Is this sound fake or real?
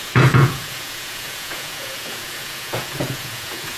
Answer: fake